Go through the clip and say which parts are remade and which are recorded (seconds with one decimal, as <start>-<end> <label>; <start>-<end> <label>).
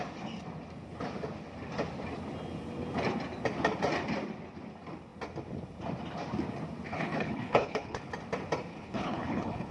0.0-6.9 recorded; 6.9-8.1 remade; 8.1-8.7 recorded; 8.7-9.7 remade